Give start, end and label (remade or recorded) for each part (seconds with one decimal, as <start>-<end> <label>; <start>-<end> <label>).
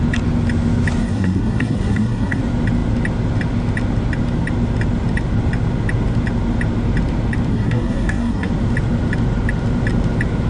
0.0-1.0 recorded; 1.0-2.4 remade; 2.4-7.5 recorded; 7.5-8.5 remade; 8.5-10.5 recorded